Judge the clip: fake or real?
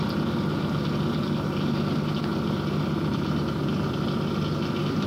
real